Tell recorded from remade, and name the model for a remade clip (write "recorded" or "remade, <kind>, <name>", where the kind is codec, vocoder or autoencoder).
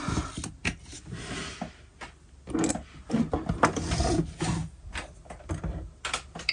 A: recorded